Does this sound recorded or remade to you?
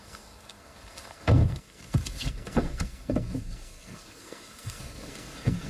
remade